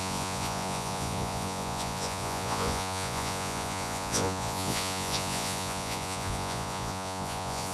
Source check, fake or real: fake